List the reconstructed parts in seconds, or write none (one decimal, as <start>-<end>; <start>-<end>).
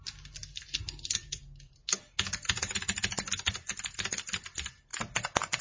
none